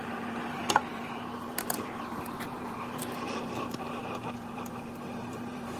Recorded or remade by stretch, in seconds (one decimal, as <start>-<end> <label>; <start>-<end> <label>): 0.0-5.8 remade